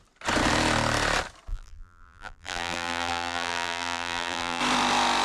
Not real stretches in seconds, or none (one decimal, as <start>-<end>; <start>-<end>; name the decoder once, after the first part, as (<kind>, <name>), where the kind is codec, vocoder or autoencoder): 1.5-4.6 (vocoder, BigVGAN v2)